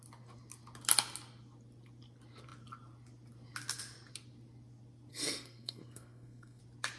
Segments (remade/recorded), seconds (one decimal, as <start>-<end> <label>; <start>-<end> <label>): 0.0-5.1 recorded; 5.1-6.6 remade; 6.6-7.0 recorded